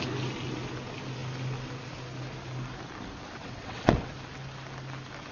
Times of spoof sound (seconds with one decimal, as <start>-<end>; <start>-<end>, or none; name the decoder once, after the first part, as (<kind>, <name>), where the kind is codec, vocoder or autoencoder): 3.4-4.1 (vocoder, WaveNeXt)